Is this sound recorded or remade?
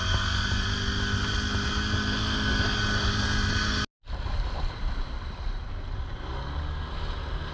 recorded